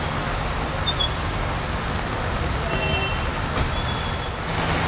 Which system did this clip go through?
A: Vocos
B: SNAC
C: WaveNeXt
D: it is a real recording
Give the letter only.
D